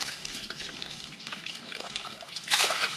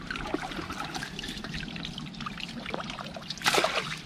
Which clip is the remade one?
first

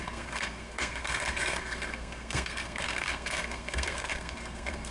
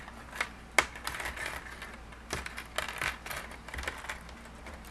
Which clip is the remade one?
first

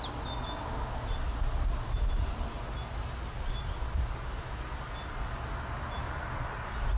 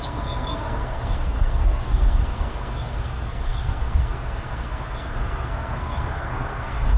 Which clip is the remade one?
second